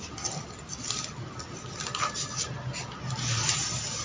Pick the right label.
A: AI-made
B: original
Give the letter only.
B